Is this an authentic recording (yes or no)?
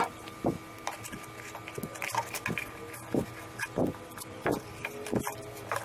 yes